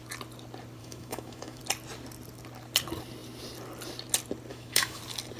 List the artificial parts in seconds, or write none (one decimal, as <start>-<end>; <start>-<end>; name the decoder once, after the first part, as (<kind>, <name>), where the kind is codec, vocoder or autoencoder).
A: 0.8-1.6 (autoencoder, DAC-VAE); 4.5-5.0